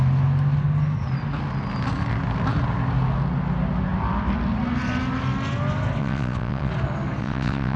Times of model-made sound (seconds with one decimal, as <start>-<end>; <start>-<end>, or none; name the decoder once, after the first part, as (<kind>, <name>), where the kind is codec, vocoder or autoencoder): 6.0-6.7 (vocoder, WaveNeXt); 7.2-7.8

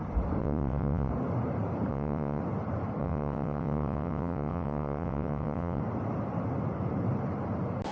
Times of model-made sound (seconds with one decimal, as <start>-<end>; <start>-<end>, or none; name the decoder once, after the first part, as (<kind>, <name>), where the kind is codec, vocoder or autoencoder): 0.4-1.1 (vocoder, WaveNeXt); 1.9-2.4; 3.0-5.8

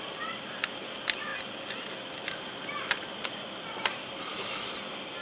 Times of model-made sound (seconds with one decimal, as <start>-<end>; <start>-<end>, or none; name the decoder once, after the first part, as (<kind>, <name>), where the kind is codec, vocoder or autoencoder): none

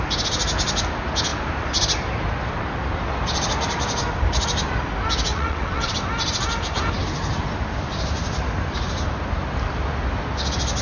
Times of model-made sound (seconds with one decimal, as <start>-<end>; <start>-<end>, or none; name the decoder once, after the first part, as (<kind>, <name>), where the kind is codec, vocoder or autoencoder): 5.3-5.9 (vocoder, WaveNeXt)